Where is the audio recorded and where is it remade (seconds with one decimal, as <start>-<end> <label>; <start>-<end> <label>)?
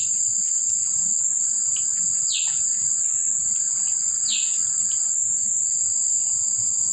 0.0-6.9 recorded